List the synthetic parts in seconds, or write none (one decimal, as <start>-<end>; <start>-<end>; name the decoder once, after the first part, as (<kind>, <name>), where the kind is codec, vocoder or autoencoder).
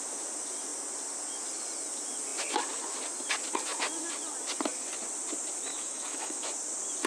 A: 5.7-6.5 (autoencoder, DAC-VAE)